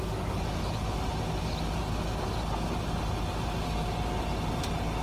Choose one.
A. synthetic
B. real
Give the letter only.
B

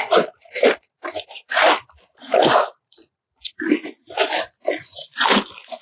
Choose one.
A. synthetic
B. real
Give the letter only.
A